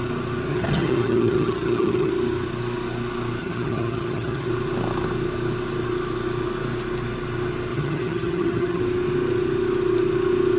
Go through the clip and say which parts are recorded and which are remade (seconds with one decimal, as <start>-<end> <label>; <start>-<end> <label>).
0.0-0.5 recorded; 0.5-2.1 remade; 2.1-3.4 recorded; 3.4-4.5 remade; 4.5-7.7 recorded; 7.7-8.8 remade; 8.8-10.6 recorded